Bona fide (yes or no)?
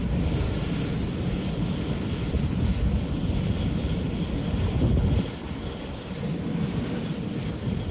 yes